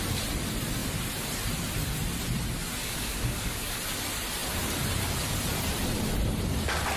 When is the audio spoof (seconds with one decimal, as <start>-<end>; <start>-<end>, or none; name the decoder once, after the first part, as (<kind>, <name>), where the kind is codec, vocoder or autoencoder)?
2.8-3.8 (codec, DAC)